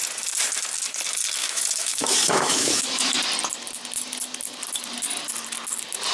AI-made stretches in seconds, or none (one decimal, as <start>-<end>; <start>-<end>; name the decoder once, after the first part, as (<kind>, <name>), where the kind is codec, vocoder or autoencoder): 1.4-3.2 (autoencoder, DAC-VAE)